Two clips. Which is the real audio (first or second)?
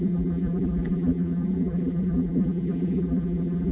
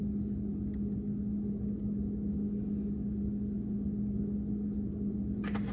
second